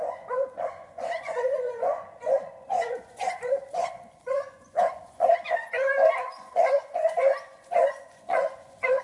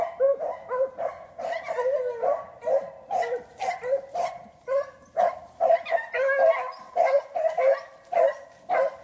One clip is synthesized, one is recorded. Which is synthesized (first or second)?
first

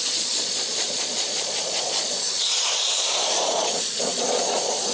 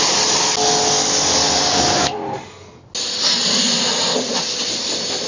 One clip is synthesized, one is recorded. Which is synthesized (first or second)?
first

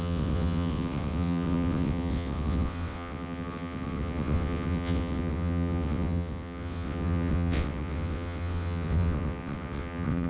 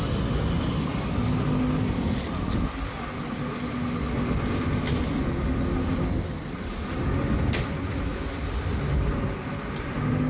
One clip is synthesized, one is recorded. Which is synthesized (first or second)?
first